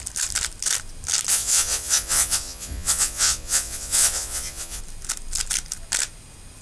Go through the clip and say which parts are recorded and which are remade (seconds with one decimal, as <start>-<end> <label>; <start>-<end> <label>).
0.0-1.3 recorded; 1.3-4.8 remade; 4.8-6.6 recorded